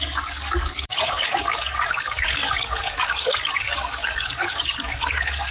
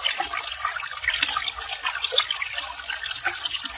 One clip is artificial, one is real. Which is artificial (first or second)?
first